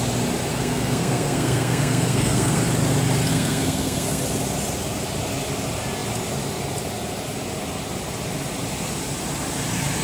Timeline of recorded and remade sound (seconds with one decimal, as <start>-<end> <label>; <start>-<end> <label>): 0.0-0.5 recorded; 0.5-2.6 remade; 2.6-3.3 recorded; 3.3-4.2 remade; 4.2-10.0 recorded